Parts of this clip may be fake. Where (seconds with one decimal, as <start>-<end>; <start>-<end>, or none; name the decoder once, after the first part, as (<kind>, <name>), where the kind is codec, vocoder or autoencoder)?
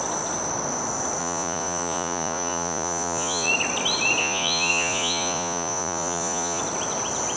1.2-3.5 (vocoder, Vocos); 4.2-6.6